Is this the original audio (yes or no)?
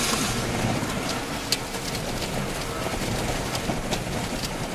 yes